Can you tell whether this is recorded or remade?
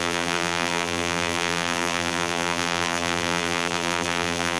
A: remade